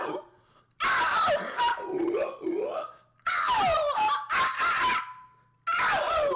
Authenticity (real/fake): real